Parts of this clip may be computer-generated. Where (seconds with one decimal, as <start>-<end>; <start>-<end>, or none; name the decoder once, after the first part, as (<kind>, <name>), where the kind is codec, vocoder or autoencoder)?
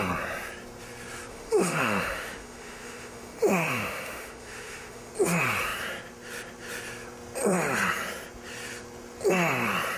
1.3-5.1 (autoencoder, DAC-VAE)